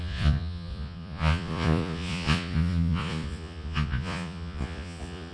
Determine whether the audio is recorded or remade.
remade